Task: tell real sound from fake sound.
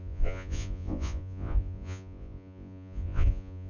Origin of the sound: fake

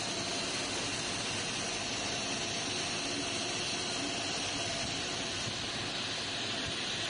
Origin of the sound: real